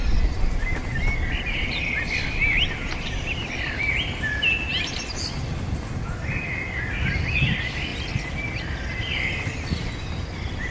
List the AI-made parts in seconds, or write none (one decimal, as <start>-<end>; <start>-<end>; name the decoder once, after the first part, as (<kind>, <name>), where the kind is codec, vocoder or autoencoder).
none